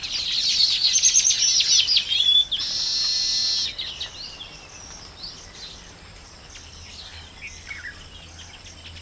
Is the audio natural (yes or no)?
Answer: yes